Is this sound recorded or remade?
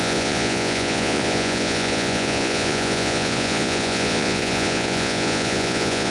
remade